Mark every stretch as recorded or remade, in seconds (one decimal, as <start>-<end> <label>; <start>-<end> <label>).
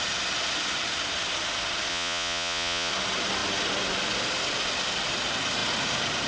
0.0-1.9 recorded; 1.9-2.9 remade; 2.9-6.3 recorded